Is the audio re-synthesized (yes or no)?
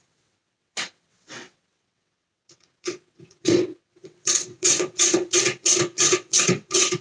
yes